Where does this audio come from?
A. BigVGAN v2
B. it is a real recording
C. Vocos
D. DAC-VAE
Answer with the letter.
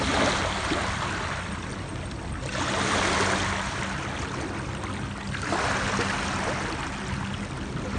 B